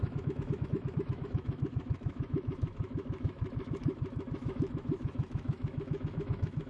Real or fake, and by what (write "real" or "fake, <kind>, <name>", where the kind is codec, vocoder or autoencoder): fake, autoencoder, DAC-VAE